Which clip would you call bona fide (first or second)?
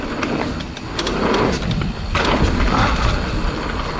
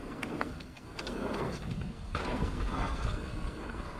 first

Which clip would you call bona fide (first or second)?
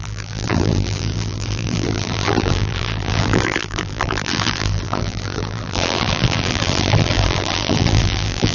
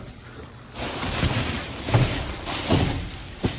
second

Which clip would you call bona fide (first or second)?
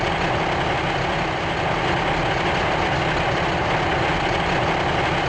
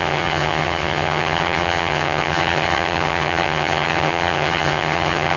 first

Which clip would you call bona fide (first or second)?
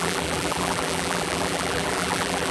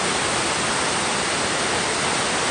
second